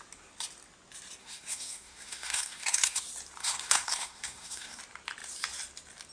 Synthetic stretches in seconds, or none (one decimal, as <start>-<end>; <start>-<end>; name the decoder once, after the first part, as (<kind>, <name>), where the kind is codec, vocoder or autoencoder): 1.2-3.0 (codec, SNAC); 3.4-4.8